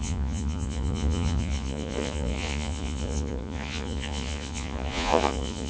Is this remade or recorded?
remade